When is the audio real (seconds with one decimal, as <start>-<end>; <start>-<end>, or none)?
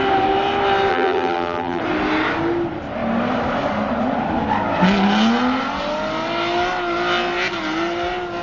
0.0-0.9; 1.8-8.4